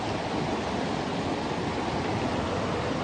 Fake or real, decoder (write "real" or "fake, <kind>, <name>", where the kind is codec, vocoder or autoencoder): real